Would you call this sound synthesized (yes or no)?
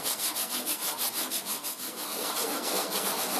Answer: yes